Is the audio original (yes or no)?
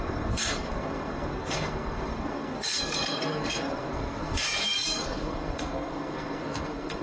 no